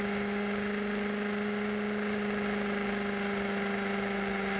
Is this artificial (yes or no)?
no